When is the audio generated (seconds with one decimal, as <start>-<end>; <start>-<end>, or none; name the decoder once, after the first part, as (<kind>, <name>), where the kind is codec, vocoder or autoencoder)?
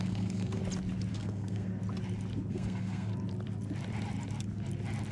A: 0.0-0.6 (codec, SNAC); 1.1-1.7; 2.5-3.1